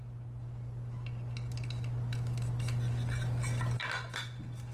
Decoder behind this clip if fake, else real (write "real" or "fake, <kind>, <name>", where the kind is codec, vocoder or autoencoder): real